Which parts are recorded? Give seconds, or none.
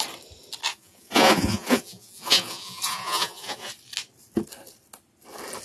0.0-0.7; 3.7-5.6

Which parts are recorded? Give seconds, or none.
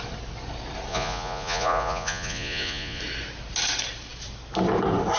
0.0-0.9; 3.0-5.2